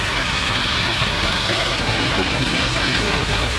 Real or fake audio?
fake